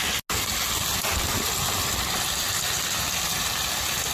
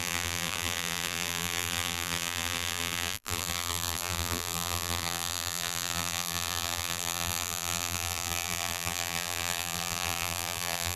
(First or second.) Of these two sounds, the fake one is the second